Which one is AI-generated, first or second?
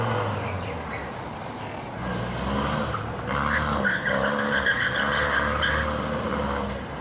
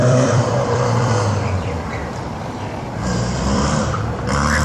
second